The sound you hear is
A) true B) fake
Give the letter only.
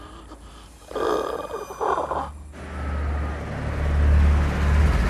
A